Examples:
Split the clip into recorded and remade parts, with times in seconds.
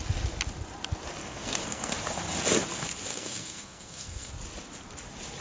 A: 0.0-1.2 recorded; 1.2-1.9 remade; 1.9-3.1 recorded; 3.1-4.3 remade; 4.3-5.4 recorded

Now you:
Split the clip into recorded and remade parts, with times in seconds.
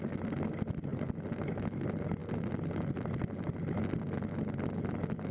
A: 0.0-5.3 recorded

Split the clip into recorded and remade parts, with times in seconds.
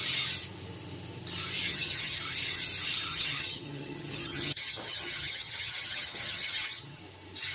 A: 0.0-1.7 recorded; 1.7-2.2 remade; 2.2-3.1 recorded; 3.1-7.0 remade; 7.0-7.5 recorded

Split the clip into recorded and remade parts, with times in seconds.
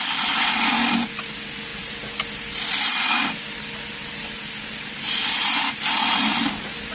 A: 0.0-6.9 recorded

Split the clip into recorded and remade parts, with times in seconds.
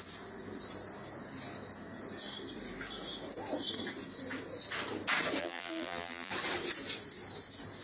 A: 0.0-5.4 recorded; 5.4-6.3 remade; 6.3-7.8 recorded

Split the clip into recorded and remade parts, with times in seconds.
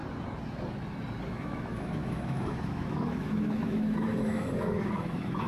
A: 0.0-1.3 recorded; 1.3-5.5 remade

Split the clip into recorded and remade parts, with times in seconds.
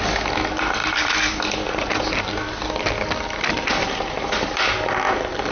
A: 0.0-0.8 recorded; 0.8-2.3 remade; 2.3-3.8 recorded; 3.8-4.6 remade; 4.6-5.5 recorded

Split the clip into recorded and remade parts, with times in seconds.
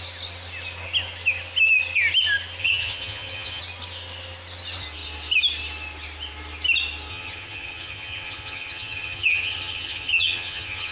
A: 0.0-2.6 recorded; 2.6-3.6 remade; 3.6-7.1 recorded; 7.1-10.9 remade